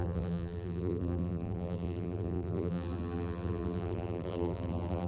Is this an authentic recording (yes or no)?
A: no